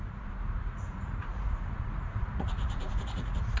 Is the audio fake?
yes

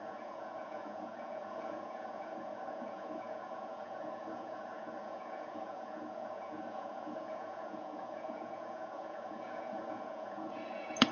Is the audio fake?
yes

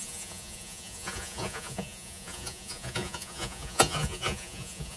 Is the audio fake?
yes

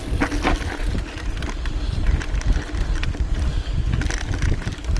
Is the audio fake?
no